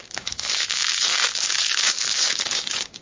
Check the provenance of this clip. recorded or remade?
remade